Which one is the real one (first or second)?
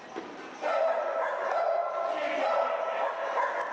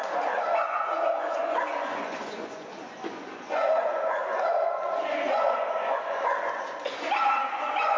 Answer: first